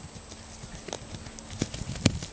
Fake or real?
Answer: real